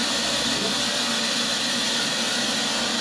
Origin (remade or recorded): recorded